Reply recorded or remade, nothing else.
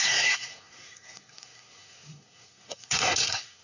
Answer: remade